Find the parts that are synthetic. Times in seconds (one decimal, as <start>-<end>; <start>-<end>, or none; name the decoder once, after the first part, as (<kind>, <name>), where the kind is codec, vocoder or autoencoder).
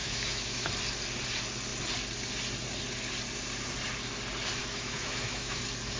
0.0-0.7 (autoencoder, DAC-VAE); 4.6-5.6